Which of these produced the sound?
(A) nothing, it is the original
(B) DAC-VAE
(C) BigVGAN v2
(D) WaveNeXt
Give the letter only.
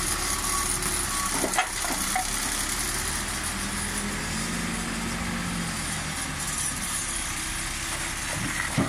A